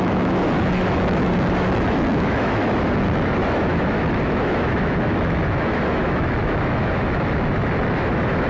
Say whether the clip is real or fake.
fake